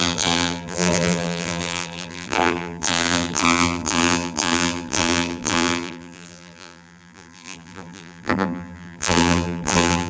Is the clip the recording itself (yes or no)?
no